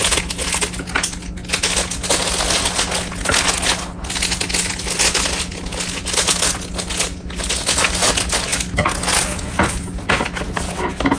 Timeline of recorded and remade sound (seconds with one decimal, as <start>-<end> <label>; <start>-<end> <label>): 0.0-11.2 recorded